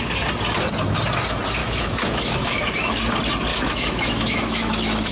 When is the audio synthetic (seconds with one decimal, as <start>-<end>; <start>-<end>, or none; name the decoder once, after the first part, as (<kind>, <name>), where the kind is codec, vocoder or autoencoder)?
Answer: 1.6-3.0 (autoencoder, DAC-VAE); 3.5-5.1